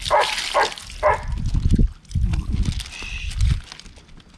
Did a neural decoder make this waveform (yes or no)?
no